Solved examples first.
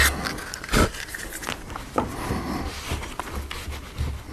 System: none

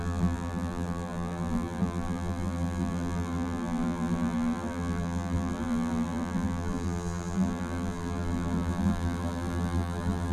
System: vocoder, BigVGAN v2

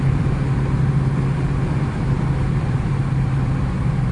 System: none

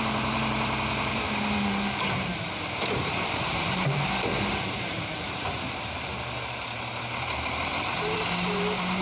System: vocoder, BigVGAN v2